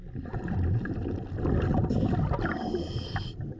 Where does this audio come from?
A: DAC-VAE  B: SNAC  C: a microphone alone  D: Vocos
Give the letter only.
C